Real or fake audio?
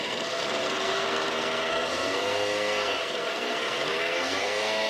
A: fake